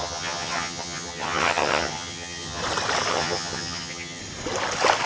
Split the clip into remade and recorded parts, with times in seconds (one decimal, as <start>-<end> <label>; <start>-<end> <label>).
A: 0.0-2.6 remade; 2.6-3.1 recorded; 3.1-4.2 remade; 4.2-5.1 recorded